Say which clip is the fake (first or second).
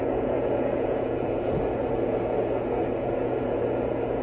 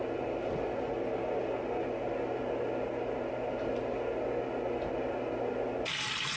first